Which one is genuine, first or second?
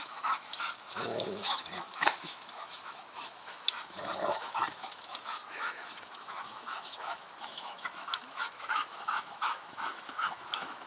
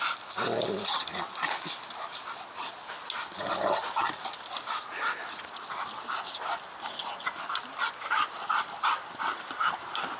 second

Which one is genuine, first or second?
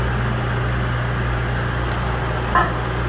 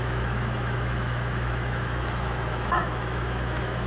first